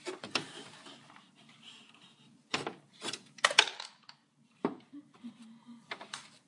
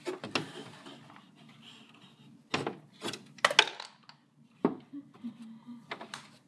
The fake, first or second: first